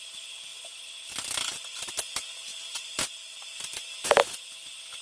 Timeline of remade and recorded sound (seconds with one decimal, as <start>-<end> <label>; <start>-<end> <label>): 0.0-0.5 recorded; 0.5-1.9 remade; 1.9-5.0 recorded